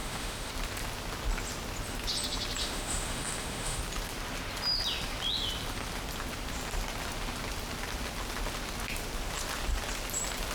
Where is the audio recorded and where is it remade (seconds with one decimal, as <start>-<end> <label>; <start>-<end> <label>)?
0.0-0.5 remade; 0.5-2.6 recorded; 2.6-3.8 remade; 3.8-10.5 recorded